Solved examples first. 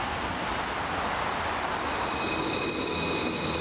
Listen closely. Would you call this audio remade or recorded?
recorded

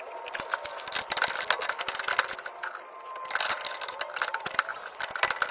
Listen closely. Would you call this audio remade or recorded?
recorded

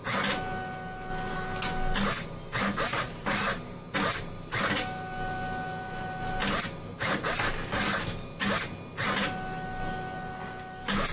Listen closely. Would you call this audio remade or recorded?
recorded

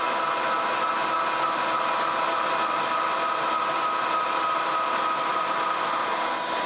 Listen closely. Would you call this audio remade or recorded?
recorded